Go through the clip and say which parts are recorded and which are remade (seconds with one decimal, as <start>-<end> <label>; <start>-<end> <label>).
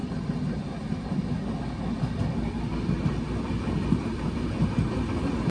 0.0-5.5 recorded